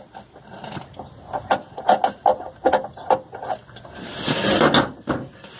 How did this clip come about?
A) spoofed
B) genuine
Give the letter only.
B